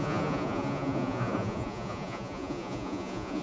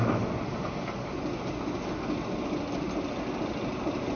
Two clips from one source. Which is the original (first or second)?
second